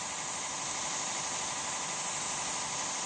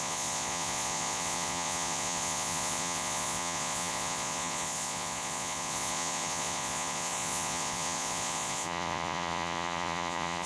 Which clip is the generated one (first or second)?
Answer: second